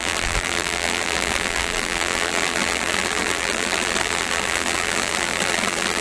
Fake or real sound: fake